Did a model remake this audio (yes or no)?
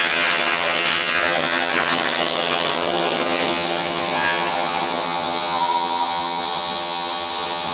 yes